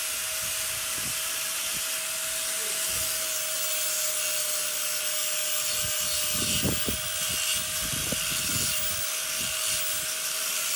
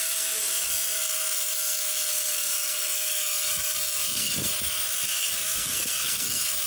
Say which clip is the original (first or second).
first